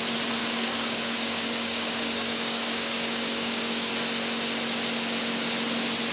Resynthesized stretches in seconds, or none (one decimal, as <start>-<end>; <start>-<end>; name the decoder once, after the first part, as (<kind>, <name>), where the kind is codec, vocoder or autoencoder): 0.4-3.9 (codec, DAC)